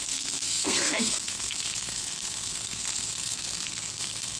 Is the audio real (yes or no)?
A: no